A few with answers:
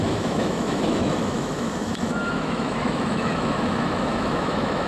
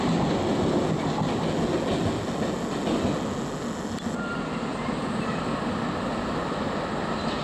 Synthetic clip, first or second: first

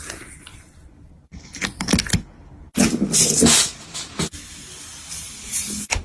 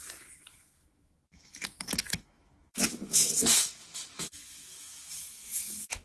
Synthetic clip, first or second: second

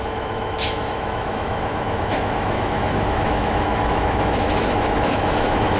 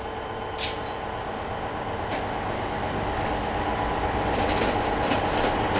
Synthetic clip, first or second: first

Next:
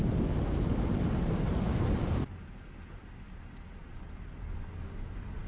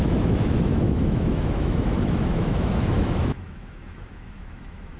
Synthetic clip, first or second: second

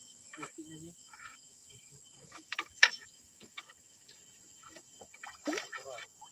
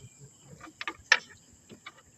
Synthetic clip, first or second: first